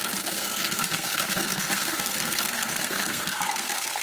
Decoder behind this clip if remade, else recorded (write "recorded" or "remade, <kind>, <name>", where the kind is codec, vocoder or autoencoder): remade, codec, SNAC